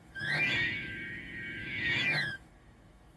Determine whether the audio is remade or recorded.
remade